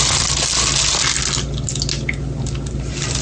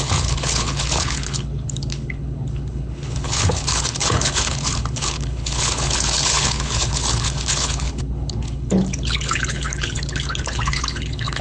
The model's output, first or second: second